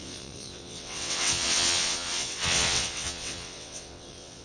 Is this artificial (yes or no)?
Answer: yes